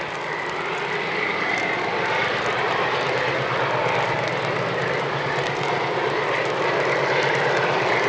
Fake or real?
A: real